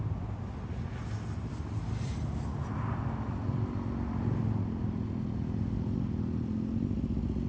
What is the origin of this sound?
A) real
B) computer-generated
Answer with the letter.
A